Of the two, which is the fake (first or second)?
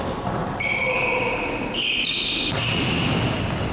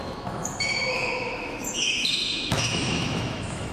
second